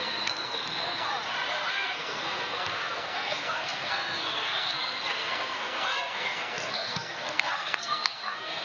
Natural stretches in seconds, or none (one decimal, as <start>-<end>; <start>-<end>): 1.1-1.7